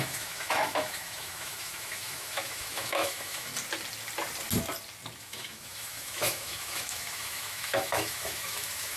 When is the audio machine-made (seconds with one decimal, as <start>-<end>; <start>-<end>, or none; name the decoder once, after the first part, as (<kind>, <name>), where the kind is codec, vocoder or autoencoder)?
0.0-3.5 (autoencoder, DAC-VAE); 5.2-9.0

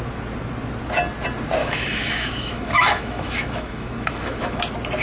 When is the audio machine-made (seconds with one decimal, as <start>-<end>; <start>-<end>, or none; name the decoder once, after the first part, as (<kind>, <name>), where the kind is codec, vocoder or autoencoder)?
1.6-4.6 (autoencoder, DAC-VAE)

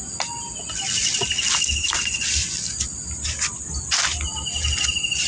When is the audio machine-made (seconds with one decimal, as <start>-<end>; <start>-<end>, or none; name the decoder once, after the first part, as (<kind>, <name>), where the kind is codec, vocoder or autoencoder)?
none

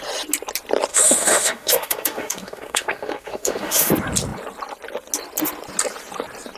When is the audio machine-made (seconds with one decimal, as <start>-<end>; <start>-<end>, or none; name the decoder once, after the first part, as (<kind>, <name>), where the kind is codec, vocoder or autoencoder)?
0.9-3.9 (autoencoder, DAC-VAE)

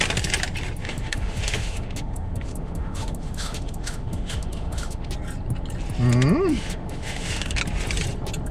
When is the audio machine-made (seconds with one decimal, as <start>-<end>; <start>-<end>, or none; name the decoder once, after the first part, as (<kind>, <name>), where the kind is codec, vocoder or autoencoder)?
0.8-5.1 (autoencoder, DAC-VAE); 6.5-7.6

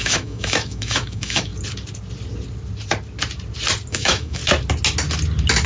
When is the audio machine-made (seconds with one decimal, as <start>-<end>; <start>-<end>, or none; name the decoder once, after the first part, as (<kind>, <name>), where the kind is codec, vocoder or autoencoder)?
0.0-1.5 (autoencoder, DAC-VAE); 3.9-4.4